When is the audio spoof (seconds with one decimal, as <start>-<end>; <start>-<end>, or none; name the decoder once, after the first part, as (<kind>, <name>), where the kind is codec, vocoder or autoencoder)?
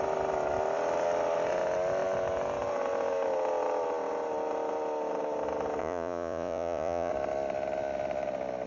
5.8-7.1 (vocoder, Vocos)